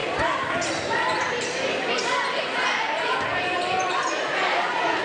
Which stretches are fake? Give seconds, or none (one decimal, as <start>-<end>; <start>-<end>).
0.0-1.9; 3.3-3.9